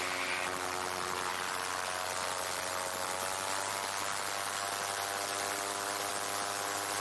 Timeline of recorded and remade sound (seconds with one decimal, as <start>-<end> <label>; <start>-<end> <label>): 0.0-7.0 recorded